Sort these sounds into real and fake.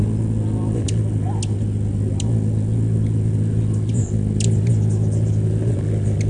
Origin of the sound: real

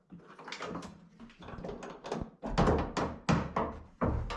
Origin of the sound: real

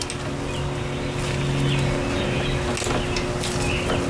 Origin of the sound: real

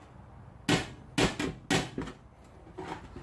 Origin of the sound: real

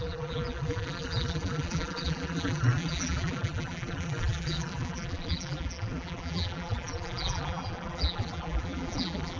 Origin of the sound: fake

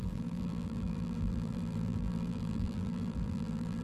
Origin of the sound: fake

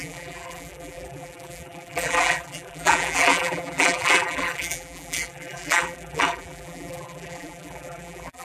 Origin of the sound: fake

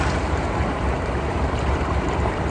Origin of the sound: fake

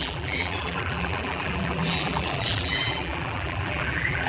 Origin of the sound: fake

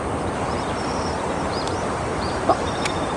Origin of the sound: fake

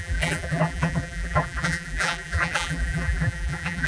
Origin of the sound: fake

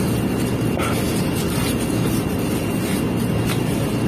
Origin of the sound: real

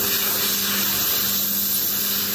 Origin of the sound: real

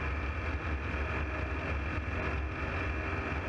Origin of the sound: real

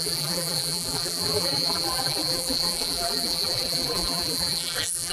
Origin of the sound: fake